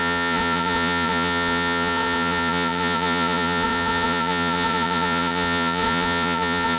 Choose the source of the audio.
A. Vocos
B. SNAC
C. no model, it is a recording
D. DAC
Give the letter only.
A